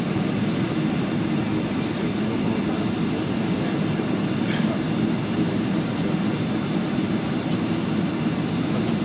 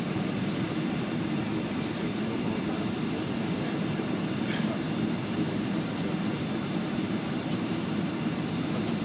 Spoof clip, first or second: second